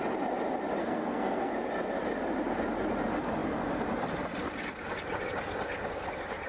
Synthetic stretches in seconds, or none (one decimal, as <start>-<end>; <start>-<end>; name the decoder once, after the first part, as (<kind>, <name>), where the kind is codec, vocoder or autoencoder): 0.8-1.5 (codec, SNAC)